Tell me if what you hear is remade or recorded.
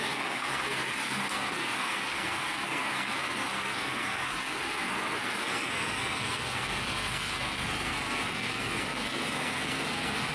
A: remade